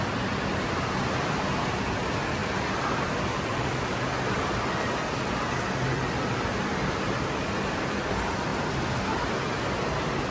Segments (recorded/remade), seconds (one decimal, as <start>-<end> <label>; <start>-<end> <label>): 0.0-2.4 recorded; 2.4-4.4 remade; 4.4-6.7 recorded; 6.7-8.1 remade; 8.1-10.3 recorded